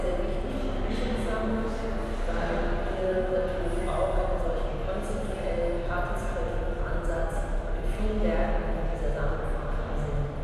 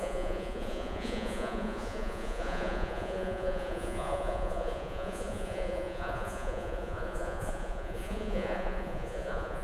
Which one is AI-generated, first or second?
second